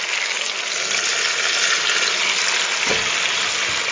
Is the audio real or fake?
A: real